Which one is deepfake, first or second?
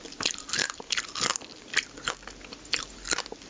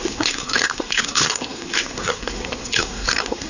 second